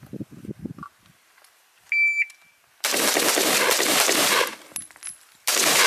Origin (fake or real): real